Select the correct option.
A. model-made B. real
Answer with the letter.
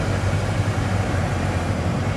A